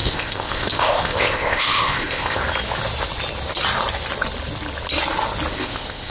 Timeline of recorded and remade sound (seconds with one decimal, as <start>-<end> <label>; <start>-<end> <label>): 0.0-2.4 remade; 2.4-5.5 recorded; 5.5-6.1 remade